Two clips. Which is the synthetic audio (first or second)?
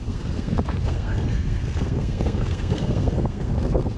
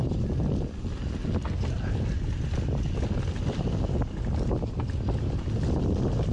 first